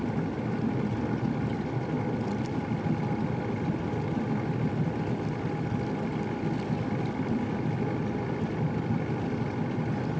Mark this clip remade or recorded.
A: recorded